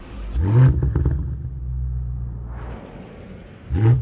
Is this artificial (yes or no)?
no